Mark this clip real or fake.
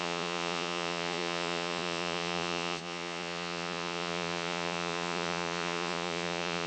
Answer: fake